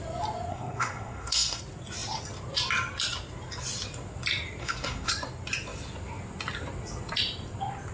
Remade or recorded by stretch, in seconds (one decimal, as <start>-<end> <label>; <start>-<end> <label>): 0.0-0.5 recorded; 0.5-1.6 remade; 1.6-4.6 recorded; 4.6-5.1 remade; 5.1-7.9 recorded